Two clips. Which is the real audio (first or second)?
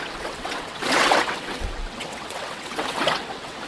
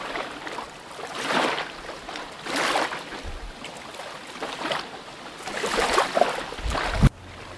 second